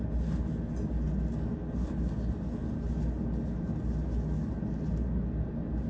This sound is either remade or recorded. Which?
recorded